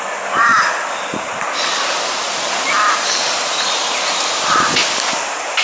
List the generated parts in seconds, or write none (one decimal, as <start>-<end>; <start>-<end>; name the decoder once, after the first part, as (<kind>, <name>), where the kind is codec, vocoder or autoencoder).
none